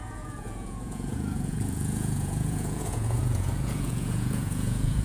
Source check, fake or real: fake